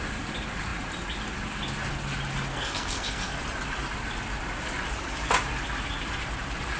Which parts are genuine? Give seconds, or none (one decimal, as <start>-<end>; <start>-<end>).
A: 0.0-2.5; 3.4-6.8